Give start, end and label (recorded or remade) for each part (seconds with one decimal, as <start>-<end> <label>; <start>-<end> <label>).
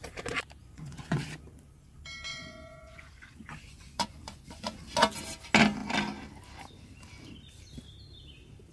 0.0-0.6 recorded; 0.6-1.3 remade; 1.3-2.3 recorded; 2.3-4.8 remade; 4.8-8.7 recorded